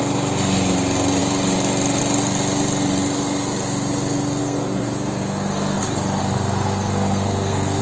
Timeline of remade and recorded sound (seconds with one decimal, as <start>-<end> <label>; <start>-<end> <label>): 0.0-4.4 recorded; 4.4-5.8 remade; 5.8-6.2 recorded; 6.2-7.8 remade